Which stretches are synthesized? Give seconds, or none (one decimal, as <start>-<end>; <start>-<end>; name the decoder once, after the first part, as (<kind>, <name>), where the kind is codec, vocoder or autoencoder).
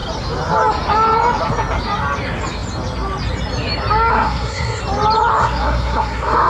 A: 4.1-4.8 (codec, SNAC); 5.4-6.5